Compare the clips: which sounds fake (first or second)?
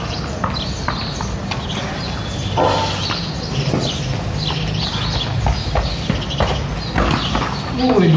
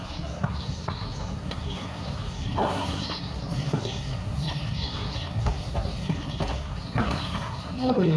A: second